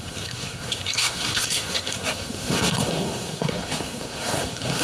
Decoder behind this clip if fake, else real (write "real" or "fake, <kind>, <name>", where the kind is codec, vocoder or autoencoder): fake, codec, SNAC